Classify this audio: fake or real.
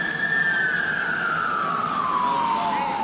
real